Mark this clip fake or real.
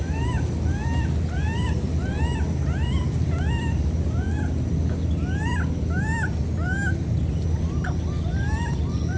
real